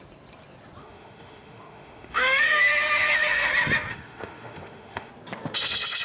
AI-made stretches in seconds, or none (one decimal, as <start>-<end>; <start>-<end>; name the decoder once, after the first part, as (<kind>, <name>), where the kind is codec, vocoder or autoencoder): 0.8-3.5 (autoencoder, DAC-VAE); 3.9-5.1